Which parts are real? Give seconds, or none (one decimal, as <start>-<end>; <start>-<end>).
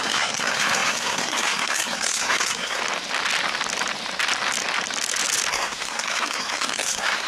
2.8-5.5